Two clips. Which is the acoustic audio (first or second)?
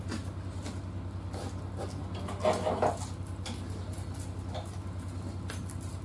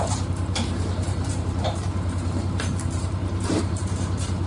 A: first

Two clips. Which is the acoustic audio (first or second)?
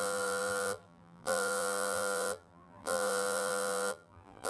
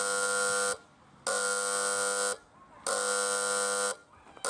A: second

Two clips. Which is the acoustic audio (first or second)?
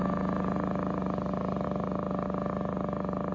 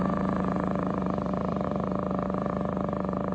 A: first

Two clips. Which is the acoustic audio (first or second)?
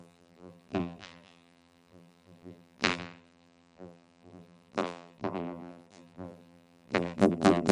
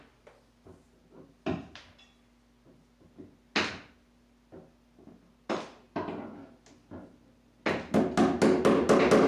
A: second